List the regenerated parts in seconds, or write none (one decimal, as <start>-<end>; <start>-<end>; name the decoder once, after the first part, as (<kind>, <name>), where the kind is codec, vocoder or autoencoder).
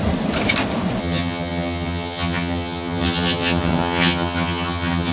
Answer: 1.0-5.1 (vocoder, HiFi-GAN)